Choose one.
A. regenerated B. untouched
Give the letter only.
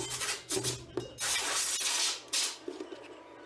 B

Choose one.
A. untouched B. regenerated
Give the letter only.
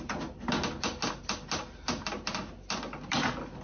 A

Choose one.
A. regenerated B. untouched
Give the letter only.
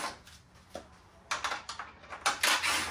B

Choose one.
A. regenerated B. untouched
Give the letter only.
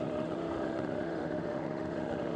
A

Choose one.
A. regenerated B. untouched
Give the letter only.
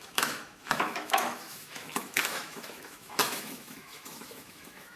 A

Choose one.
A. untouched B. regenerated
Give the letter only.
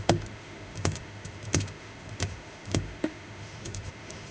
B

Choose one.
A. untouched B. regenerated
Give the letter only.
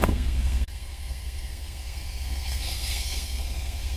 B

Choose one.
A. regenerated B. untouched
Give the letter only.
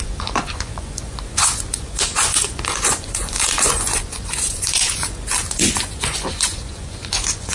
A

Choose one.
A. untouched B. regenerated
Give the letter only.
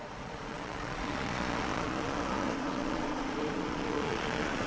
B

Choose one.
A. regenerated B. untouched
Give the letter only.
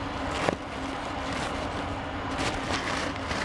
B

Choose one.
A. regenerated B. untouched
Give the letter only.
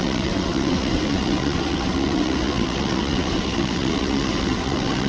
A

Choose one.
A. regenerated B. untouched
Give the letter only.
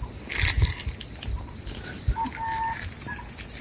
B